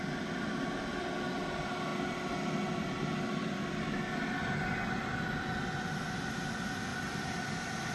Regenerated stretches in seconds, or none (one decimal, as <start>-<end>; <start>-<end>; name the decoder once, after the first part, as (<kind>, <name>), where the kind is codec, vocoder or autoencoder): 6.9-7.9 (vocoder, BigVGAN v2)